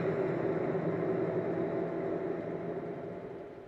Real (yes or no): yes